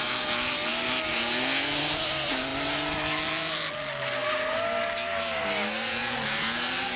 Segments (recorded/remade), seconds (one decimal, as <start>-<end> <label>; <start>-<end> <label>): 0.0-7.0 recorded